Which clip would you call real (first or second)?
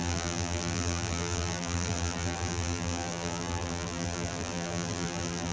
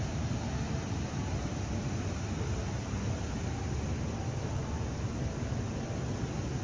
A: second